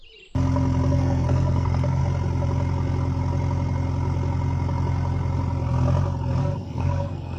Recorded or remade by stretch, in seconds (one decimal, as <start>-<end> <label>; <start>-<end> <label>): 0.0-0.9 recorded; 0.9-2.0 remade; 2.0-6.4 recorded; 6.4-7.4 remade